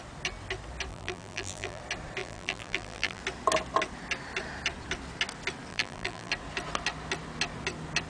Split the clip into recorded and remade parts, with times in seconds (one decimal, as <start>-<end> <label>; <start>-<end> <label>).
0.0-0.9 recorded; 0.9-1.8 remade; 1.8-2.2 recorded; 2.2-3.2 remade; 3.2-5.7 recorded; 5.7-6.3 remade; 6.3-8.1 recorded